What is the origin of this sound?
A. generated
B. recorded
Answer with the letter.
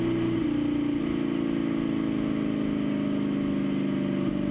B